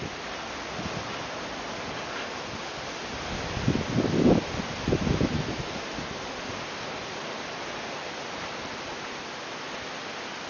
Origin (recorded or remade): recorded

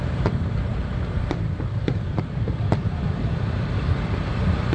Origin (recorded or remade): remade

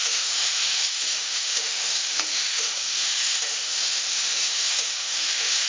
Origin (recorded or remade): remade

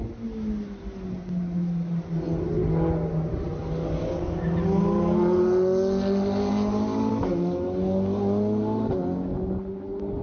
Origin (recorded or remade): recorded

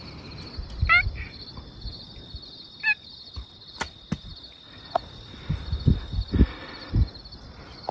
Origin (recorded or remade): recorded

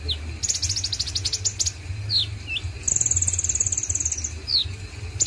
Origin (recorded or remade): recorded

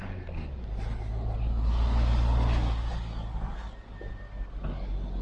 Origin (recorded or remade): recorded